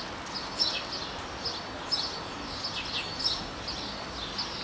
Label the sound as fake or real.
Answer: real